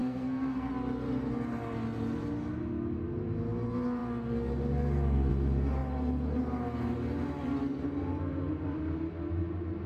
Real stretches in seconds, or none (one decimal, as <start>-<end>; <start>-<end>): 0.7-9.9